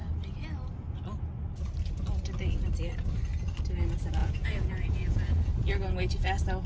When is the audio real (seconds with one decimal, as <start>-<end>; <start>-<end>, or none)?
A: 0.0-4.2; 5.5-6.7